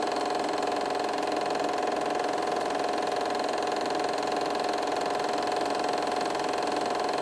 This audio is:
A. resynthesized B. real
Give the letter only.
B